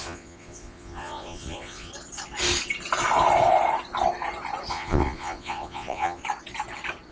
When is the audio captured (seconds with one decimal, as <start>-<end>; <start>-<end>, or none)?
1.9-4.7; 6.2-7.1